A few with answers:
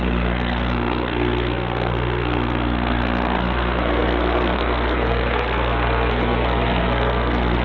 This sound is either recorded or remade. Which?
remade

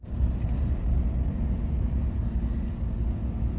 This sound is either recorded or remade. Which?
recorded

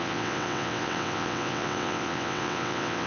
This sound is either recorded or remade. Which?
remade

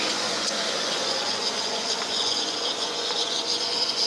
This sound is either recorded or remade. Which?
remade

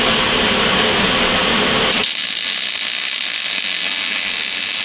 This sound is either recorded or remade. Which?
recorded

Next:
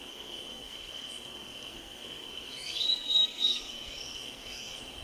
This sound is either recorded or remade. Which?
remade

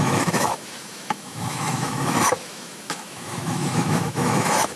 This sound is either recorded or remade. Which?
remade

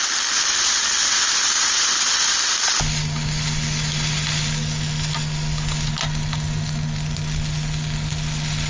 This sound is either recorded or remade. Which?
recorded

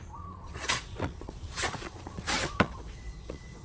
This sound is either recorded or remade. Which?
remade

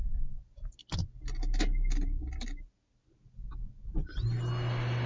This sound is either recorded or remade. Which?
recorded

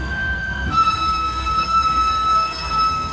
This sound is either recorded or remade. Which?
remade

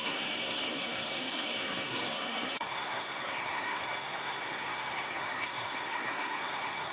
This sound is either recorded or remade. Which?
remade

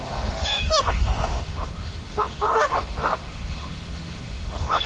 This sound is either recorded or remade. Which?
remade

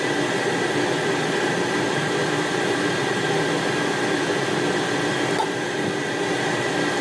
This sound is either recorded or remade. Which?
recorded